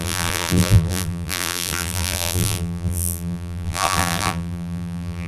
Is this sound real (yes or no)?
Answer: no